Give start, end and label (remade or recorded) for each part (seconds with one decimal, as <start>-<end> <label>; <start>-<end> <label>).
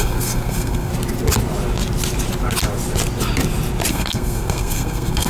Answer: 0.0-0.9 remade; 0.9-3.9 recorded; 3.9-5.3 remade